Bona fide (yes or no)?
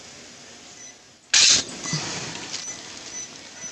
yes